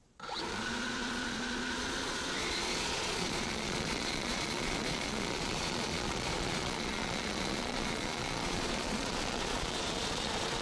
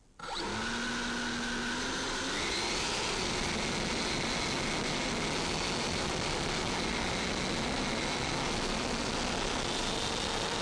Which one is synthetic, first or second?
first